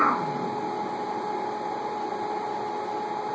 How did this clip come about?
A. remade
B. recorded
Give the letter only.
B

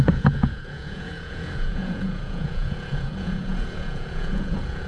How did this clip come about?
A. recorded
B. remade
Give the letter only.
B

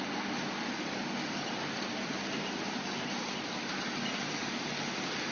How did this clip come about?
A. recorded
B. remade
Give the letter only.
A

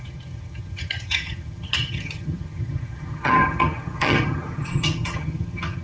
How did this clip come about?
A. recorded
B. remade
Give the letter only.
B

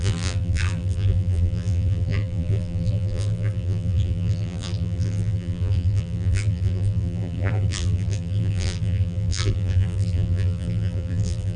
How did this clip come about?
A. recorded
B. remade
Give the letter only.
B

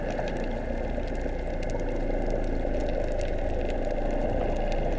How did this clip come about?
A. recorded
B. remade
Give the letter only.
A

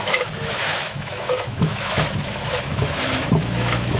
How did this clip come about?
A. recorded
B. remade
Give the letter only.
B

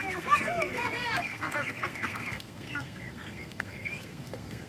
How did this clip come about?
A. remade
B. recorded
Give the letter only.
A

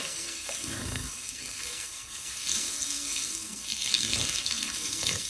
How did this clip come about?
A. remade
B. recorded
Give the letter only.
A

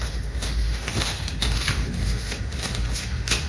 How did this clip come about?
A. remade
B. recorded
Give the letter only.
A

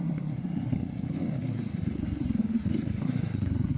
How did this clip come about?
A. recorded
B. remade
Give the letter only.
B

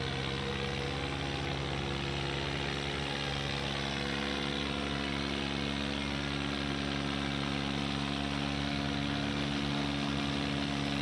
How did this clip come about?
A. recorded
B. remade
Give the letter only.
A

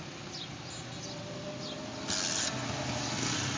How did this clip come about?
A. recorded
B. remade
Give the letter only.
A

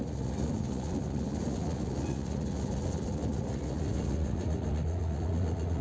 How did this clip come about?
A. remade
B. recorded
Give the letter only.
A